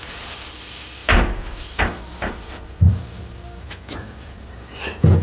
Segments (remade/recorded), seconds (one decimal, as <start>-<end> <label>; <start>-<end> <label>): 0.0-5.2 recorded